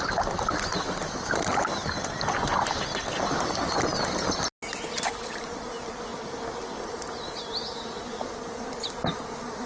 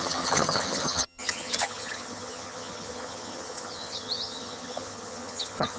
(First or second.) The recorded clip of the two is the first